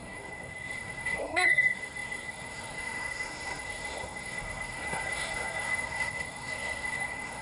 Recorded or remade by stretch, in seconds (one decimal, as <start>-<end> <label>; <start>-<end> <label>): 0.0-7.4 remade